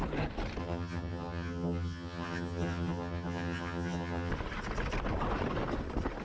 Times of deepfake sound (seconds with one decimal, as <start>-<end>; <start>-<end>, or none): 0.6-4.3